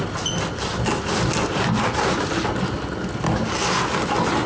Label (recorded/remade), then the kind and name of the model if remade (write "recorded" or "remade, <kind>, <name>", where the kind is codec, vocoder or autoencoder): recorded